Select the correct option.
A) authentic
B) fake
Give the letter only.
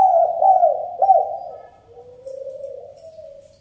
A